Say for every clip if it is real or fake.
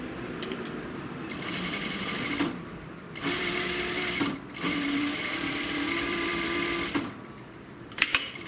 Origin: fake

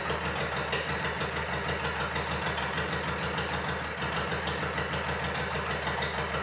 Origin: real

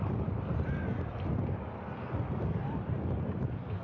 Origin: real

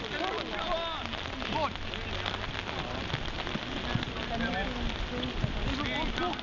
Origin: real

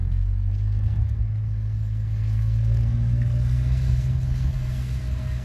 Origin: fake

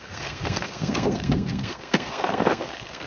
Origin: fake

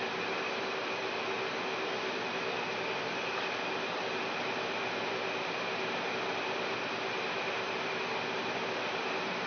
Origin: real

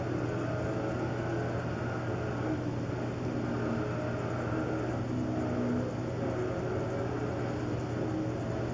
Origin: real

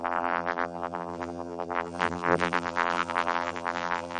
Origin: fake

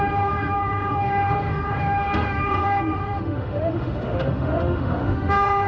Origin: fake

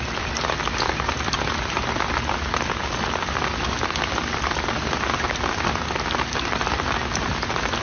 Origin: real